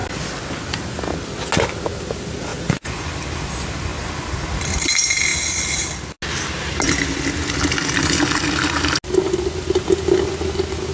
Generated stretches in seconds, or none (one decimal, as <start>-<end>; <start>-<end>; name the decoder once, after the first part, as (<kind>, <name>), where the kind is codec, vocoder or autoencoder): 2.5-3.1 (vocoder, Vocos)